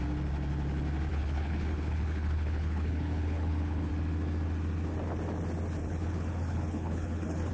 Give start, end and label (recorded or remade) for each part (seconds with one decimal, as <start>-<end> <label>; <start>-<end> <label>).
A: 0.0-1.1 recorded; 1.1-3.9 remade; 3.9-5.8 recorded; 5.8-7.5 remade